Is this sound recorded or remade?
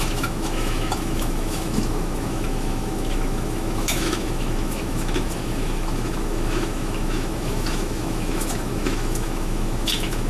remade